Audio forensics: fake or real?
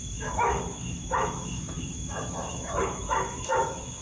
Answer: fake